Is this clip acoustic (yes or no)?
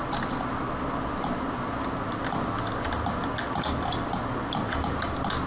yes